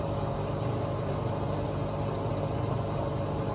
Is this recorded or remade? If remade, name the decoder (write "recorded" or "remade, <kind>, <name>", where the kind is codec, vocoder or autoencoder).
remade, vocoder, BigVGAN v2